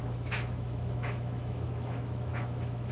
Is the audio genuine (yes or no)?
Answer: no